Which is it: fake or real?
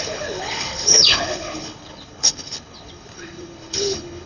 fake